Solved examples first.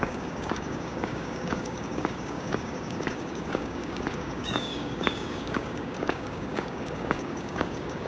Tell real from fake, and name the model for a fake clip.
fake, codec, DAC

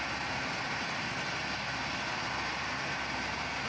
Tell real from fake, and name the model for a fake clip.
real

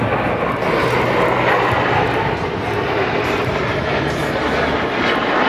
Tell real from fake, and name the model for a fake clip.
real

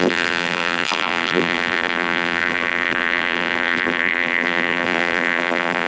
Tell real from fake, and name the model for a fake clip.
fake, vocoder, BigVGAN v2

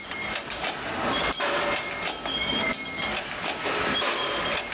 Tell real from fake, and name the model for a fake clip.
real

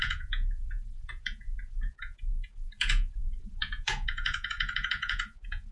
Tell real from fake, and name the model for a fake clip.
fake, vocoder, Vocos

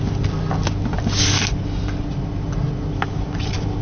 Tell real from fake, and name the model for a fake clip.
real